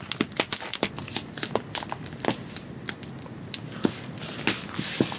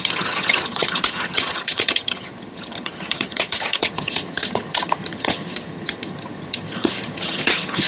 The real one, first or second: first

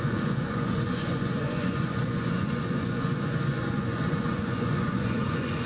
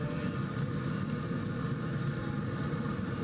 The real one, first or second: second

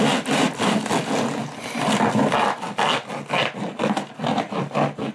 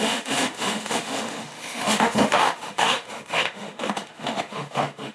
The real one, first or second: first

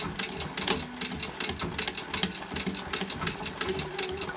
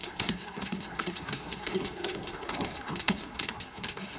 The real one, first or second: first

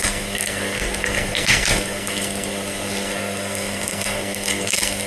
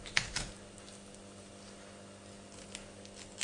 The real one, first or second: second